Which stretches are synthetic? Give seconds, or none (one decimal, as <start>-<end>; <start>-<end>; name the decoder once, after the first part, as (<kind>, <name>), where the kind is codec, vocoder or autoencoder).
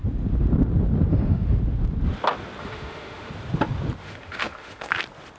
1.1-1.6 (autoencoder, DAC-VAE); 2.6-3.3; 4.0-4.9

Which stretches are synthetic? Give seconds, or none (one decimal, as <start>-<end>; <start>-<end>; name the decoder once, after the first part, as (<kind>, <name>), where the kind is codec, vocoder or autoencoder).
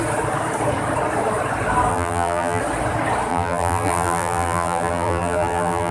1.9-2.6 (vocoder, BigVGAN v2); 3.3-5.9